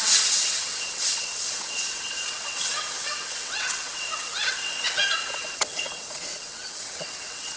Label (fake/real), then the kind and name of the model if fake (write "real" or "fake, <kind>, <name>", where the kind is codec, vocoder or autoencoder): fake, vocoder, WaveNeXt